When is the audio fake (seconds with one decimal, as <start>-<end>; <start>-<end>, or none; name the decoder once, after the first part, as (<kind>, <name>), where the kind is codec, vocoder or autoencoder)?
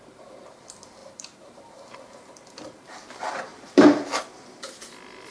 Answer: 1.0-4.2 (vocoder, BigVGAN v2)